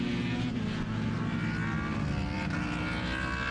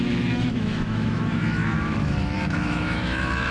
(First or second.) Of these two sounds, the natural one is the first